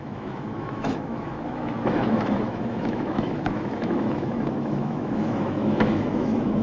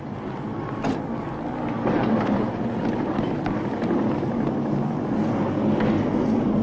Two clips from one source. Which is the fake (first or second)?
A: first